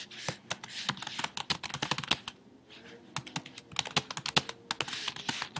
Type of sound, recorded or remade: recorded